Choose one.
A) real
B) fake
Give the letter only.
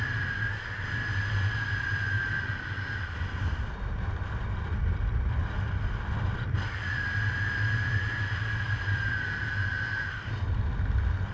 A